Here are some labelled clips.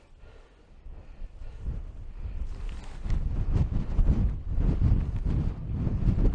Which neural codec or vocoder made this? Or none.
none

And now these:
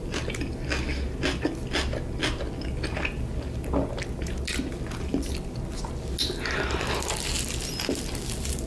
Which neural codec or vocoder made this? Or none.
none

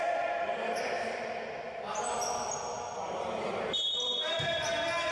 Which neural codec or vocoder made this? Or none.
none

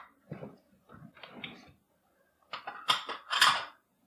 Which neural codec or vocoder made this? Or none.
none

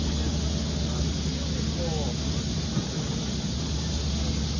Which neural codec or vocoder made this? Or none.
none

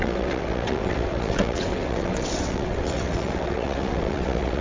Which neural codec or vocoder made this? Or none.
vocoder, WaveNeXt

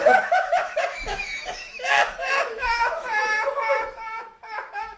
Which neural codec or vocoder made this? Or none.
autoencoder, DAC-VAE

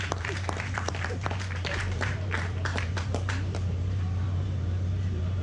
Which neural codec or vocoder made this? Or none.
vocoder, BigVGAN v2